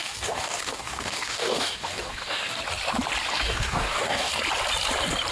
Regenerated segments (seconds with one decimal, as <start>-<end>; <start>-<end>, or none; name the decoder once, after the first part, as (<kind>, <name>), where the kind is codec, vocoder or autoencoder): 0.0-2.6 (codec, DAC); 3.3-4.3